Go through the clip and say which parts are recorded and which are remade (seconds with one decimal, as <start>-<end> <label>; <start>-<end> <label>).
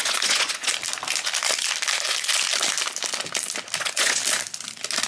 0.0-0.7 remade; 0.7-3.8 recorded; 3.8-4.2 remade; 4.2-5.1 recorded